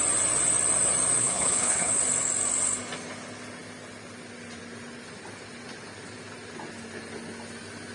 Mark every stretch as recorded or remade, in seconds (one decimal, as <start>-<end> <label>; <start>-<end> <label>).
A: 0.0-1.2 recorded; 1.2-2.0 remade; 2.0-7.9 recorded